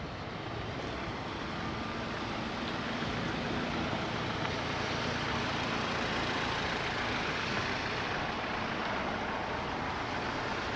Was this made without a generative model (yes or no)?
yes